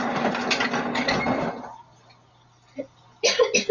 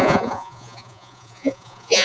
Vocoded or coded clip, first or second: second